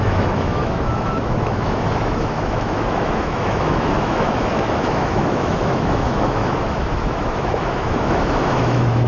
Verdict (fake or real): fake